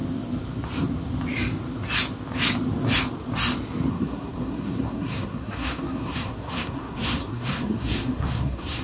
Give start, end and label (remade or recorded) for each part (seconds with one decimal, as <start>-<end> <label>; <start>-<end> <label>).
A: 0.0-3.9 recorded; 3.9-8.8 remade